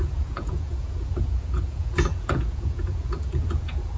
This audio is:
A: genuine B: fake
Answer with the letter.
B